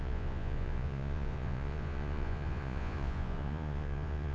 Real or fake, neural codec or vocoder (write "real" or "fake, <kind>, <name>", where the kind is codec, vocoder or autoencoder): fake, vocoder, Vocos